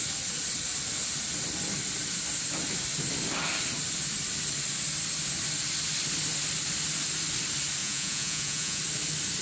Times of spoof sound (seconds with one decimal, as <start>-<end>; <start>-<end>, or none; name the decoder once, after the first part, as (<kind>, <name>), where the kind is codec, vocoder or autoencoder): 7.8-8.8 (vocoder, Vocos)